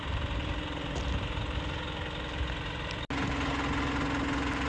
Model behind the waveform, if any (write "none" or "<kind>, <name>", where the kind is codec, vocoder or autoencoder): none